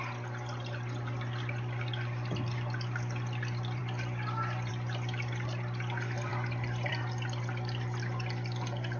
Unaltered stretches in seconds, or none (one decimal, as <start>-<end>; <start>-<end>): 0.0-9.0